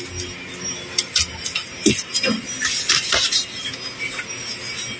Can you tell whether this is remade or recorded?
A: recorded